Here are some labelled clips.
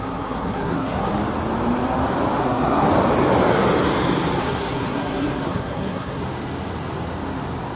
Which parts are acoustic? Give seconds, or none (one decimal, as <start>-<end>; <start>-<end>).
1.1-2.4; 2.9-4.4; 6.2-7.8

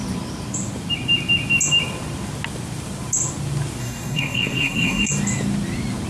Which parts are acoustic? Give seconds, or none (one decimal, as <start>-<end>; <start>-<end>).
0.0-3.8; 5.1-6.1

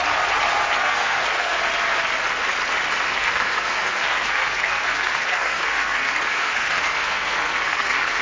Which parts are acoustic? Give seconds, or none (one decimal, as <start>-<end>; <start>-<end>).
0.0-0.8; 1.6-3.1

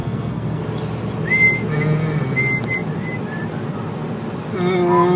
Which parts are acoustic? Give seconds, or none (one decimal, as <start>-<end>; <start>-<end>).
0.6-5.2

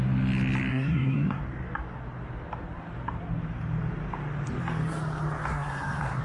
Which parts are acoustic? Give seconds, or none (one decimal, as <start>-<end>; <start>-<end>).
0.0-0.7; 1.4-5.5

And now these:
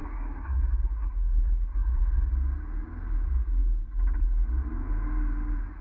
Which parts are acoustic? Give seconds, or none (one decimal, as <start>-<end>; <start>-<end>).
2.3-5.8